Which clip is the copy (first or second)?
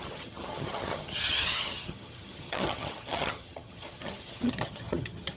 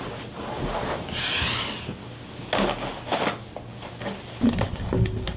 first